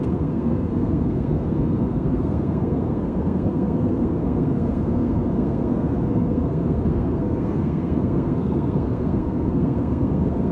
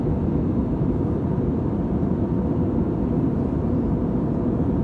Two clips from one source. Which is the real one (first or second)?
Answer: second